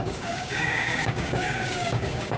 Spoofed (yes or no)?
yes